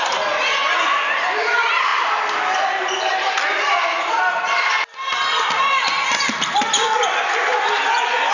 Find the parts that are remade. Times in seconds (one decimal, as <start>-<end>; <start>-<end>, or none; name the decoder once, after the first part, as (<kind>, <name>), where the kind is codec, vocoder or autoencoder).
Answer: none